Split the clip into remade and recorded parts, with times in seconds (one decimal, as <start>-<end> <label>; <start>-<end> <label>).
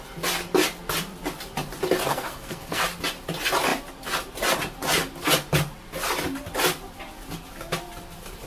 0.0-2.1 recorded; 2.1-2.8 remade; 2.8-8.5 recorded